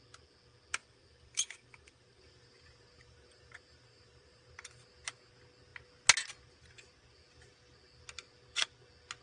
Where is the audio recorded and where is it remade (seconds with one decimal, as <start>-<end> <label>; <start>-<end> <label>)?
0.0-0.8 recorded; 0.8-4.5 remade; 4.5-9.2 recorded